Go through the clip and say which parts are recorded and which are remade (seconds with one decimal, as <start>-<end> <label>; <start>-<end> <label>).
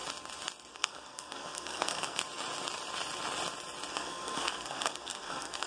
0.0-0.7 recorded; 0.7-2.2 remade; 2.2-3.9 recorded; 3.9-5.7 remade